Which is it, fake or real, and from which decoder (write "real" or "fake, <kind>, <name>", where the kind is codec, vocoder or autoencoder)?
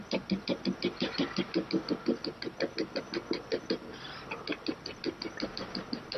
real